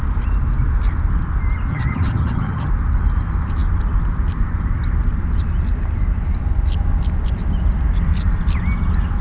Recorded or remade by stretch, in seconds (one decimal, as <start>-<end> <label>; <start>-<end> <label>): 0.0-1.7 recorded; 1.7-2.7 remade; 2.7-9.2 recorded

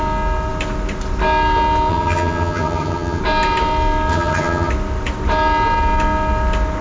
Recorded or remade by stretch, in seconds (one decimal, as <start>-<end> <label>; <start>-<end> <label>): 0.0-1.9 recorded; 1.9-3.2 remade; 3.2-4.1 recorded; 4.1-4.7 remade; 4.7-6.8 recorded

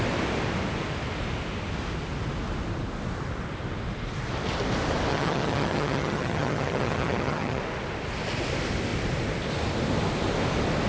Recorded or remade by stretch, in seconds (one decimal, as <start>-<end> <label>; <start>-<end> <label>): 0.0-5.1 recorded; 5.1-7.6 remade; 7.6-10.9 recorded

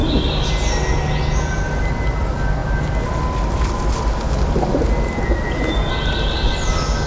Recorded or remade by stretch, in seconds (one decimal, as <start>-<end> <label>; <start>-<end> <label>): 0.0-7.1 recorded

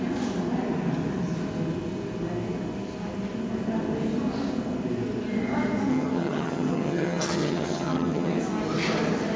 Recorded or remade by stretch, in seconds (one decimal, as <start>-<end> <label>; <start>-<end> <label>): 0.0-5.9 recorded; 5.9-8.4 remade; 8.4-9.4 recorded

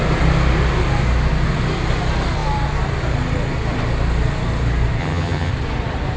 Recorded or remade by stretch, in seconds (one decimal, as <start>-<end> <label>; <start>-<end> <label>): 0.0-5.0 recorded; 5.0-5.5 remade; 5.5-6.2 recorded

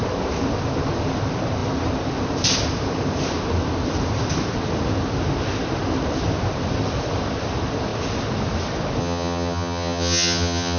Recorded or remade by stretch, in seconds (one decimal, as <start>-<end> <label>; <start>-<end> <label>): 0.0-9.0 recorded; 9.0-10.8 remade

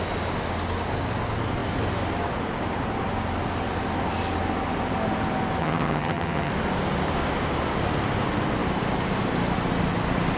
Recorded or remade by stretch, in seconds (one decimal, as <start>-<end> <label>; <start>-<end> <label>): 0.0-5.6 recorded; 5.6-6.5 remade; 6.5-10.4 recorded